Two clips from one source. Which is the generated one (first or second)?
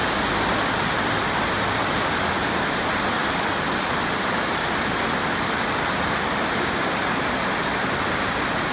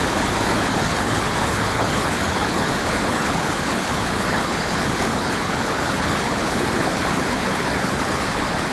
second